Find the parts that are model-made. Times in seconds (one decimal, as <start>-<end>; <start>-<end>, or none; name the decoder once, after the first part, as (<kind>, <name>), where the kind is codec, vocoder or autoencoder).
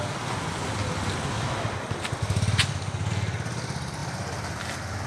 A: none